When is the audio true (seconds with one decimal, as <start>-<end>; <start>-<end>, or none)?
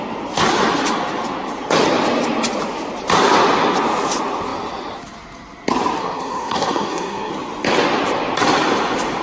0.0-6.0; 7.3-9.2